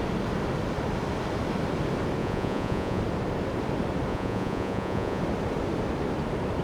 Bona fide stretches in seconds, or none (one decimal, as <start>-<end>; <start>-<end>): 0.0-2.2; 3.0-4.1; 5.2-6.6